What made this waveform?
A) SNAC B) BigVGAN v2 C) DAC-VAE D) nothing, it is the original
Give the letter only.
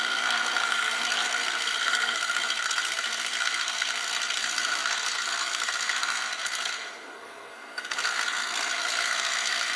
A